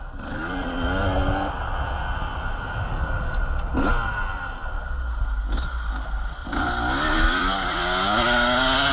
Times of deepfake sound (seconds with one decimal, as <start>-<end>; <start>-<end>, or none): 6.4-7.8